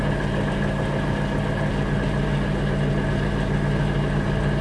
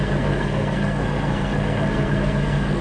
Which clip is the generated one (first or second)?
second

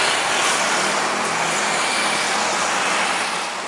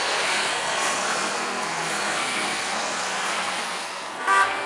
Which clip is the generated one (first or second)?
second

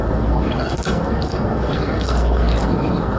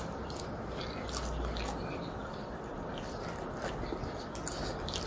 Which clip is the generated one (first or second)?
first